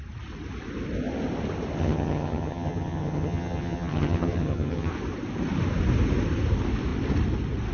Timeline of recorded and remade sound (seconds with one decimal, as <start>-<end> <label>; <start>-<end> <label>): 0.0-1.8 recorded; 1.8-4.9 remade; 4.9-7.7 recorded